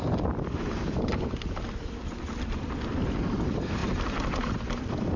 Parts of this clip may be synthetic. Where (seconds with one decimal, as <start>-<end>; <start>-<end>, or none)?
0.0-1.1; 2.2-5.2